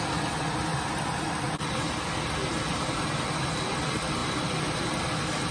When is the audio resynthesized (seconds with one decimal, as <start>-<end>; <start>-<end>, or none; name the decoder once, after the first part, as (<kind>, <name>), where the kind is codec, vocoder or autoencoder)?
0.7-1.7 (vocoder, BigVGAN v2); 2.4-3.6; 4.2-5.0